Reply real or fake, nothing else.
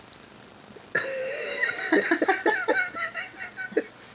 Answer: real